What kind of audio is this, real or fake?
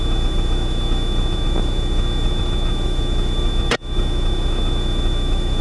fake